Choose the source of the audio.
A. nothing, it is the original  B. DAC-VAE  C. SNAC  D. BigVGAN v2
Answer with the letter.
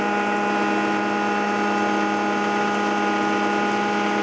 A